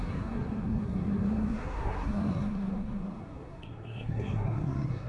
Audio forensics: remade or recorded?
remade